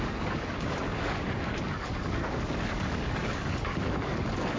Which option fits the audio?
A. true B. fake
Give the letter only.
B